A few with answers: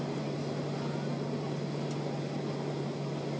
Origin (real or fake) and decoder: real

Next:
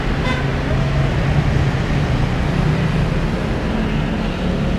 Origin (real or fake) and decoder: real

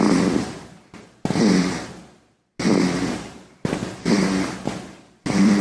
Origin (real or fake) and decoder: real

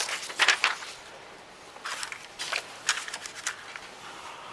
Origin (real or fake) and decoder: real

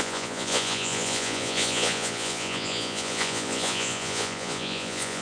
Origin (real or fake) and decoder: fake, vocoder, Vocos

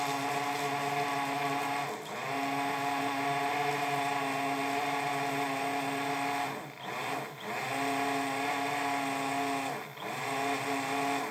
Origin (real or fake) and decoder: real